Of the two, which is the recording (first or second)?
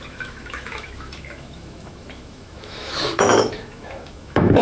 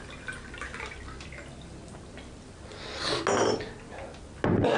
second